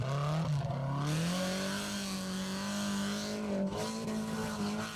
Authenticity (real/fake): real